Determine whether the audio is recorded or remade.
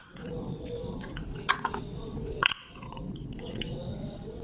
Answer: remade